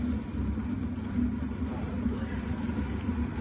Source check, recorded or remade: recorded